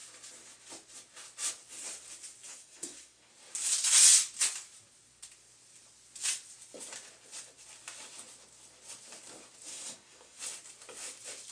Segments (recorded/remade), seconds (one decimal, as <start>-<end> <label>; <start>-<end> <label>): 0.0-2.5 recorded; 2.5-3.3 remade; 3.3-9.7 recorded; 9.7-10.4 remade; 10.4-11.5 recorded